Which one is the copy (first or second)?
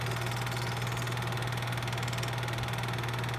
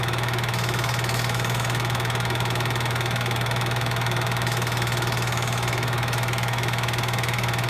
second